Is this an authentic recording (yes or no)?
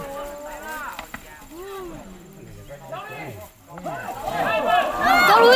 yes